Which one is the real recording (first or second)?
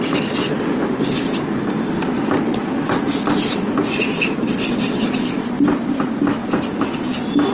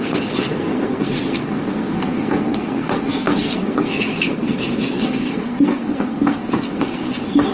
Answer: first